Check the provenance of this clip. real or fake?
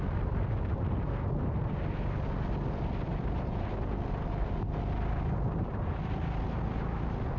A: real